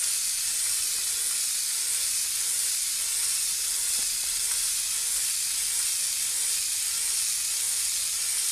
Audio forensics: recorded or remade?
recorded